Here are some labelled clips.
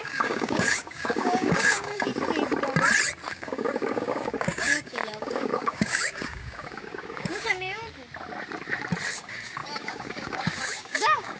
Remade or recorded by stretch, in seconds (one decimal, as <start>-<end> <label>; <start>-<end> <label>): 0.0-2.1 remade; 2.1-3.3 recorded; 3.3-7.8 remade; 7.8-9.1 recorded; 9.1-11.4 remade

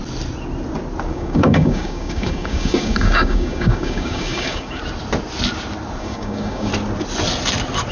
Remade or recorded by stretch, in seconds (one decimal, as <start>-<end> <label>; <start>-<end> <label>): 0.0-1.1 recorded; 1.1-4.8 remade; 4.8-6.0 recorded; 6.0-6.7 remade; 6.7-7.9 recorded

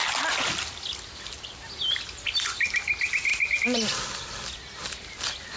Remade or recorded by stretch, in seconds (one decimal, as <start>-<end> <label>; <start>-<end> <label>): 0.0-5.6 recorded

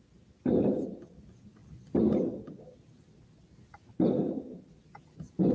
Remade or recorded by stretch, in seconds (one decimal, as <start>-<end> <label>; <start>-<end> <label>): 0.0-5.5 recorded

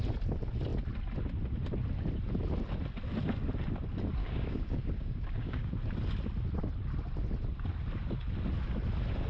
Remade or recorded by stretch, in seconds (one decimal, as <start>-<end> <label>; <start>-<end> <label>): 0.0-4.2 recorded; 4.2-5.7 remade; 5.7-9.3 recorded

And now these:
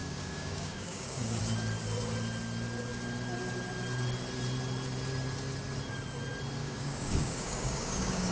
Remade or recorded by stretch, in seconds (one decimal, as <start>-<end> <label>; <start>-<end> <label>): 0.0-1.4 remade; 1.4-6.6 recorded; 6.6-8.3 remade